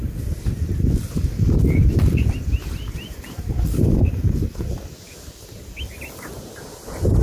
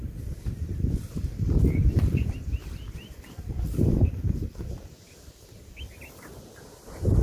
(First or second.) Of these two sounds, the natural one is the first